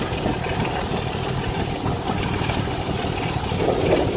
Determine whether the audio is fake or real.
real